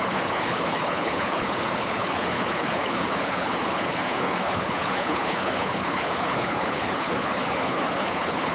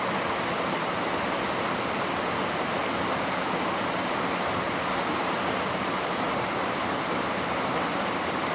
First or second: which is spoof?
first